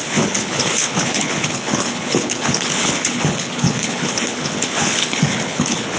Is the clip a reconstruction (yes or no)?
yes